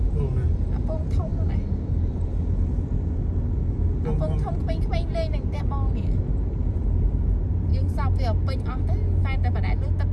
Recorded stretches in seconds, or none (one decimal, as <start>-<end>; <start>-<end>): 0.0-10.1